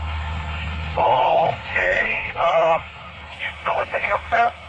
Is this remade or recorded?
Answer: remade